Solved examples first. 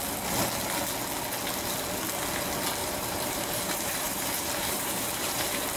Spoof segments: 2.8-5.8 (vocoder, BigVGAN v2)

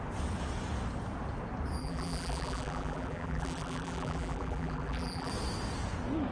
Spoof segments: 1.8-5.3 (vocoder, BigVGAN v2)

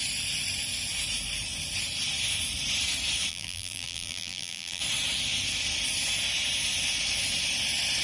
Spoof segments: 3.3-4.8 (vocoder, BigVGAN v2)